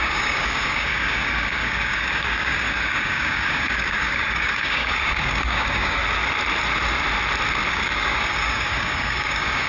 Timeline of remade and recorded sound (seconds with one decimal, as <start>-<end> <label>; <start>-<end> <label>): 0.0-6.0 remade; 6.0-7.7 recorded; 7.7-9.7 remade